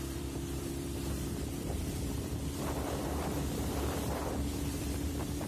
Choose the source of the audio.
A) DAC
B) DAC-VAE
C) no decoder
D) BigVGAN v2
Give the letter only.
D